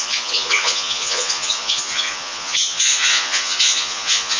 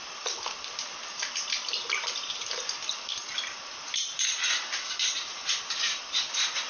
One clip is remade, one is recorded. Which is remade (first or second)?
first